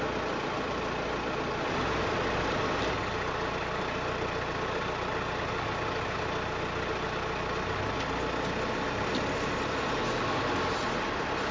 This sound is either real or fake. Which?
real